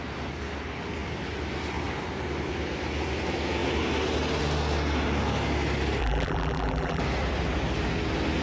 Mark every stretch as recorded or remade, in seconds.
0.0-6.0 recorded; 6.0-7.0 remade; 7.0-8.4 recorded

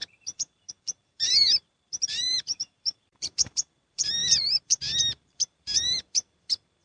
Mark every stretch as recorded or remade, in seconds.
0.0-6.8 remade

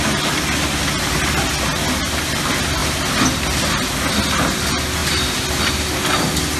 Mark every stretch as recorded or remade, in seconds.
0.0-6.6 recorded

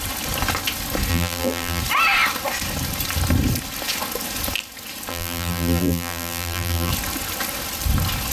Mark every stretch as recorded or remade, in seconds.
0.0-1.1 recorded; 1.1-1.8 remade; 1.8-5.1 recorded; 5.1-6.9 remade; 6.9-8.3 recorded

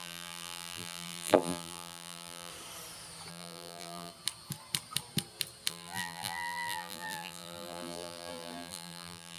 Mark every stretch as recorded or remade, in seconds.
0.0-2.5 remade; 2.5-3.3 recorded; 3.3-4.1 remade; 4.1-5.7 recorded; 5.7-9.4 remade

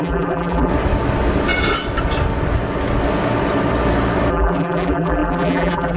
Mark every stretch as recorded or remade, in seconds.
0.0-0.7 remade; 0.7-4.3 recorded; 4.3-6.0 remade

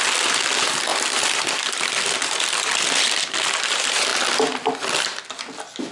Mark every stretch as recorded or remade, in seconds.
0.0-0.9 recorded; 0.9-2.0 remade; 2.0-5.9 recorded

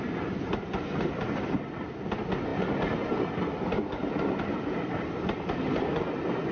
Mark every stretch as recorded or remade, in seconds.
0.0-6.5 recorded